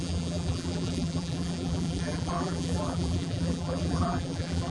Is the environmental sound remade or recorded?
remade